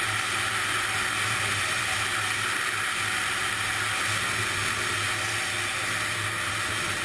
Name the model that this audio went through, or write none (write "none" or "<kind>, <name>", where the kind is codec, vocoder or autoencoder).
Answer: none